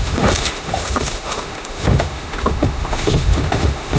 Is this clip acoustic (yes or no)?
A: no